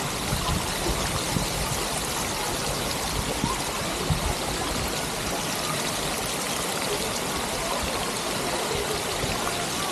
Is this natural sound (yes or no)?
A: yes